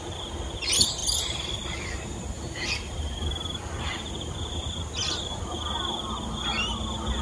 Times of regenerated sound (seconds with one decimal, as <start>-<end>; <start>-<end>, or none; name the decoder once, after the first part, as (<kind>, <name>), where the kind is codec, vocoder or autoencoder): 1.0-4.1 (vocoder, BigVGAN v2)